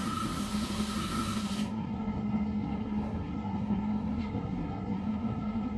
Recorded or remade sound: remade